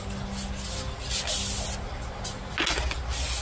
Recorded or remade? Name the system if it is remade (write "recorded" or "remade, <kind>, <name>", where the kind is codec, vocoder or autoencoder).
recorded